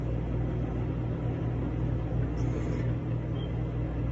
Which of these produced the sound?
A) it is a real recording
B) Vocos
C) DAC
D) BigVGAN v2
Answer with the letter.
A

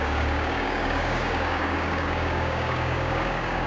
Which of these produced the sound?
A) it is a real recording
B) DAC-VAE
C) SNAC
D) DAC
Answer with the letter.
D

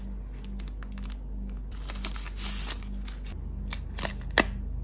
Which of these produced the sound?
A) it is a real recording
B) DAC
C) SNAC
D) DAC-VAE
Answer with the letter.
A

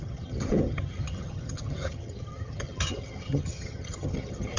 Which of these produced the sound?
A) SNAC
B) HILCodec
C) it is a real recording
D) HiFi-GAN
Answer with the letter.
D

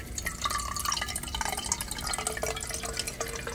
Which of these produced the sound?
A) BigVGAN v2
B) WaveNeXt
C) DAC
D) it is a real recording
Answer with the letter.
D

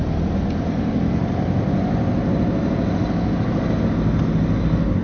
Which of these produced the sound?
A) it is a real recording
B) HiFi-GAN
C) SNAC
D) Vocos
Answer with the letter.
A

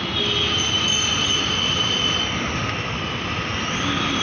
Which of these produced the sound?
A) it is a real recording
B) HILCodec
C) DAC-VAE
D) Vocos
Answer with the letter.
A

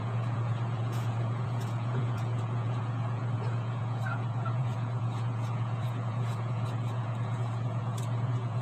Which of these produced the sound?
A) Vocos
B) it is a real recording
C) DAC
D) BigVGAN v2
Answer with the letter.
A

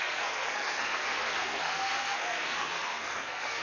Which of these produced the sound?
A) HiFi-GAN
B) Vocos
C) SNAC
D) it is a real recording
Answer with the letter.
C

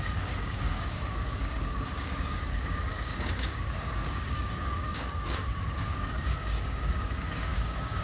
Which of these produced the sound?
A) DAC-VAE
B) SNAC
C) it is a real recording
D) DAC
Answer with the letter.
D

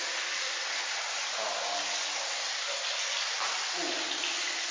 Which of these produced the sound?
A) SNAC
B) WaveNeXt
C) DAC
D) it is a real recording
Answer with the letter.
D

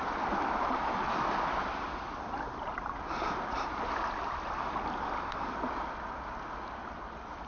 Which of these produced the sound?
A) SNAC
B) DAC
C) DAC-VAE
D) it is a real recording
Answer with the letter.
D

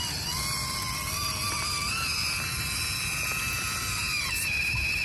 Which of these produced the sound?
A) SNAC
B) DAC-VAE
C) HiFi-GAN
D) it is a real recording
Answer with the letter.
D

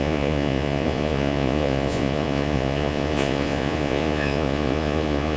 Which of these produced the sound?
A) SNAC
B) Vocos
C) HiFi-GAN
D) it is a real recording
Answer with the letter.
B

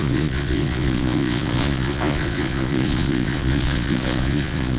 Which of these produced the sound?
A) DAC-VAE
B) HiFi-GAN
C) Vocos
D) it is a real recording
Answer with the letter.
C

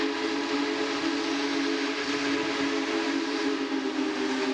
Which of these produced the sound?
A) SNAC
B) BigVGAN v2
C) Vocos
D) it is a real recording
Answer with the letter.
D